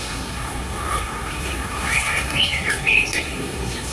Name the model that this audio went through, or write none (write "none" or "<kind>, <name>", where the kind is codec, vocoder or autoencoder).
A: codec, SNAC